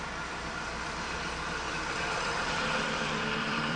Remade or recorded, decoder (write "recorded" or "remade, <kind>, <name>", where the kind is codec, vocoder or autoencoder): remade, vocoder, BigVGAN v2